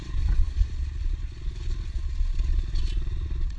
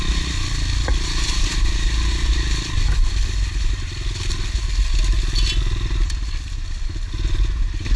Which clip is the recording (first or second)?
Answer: second